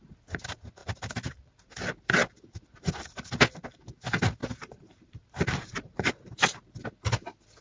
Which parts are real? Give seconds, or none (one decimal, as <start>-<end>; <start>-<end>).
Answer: 0.0-0.8; 1.7-4.4; 6.1-7.6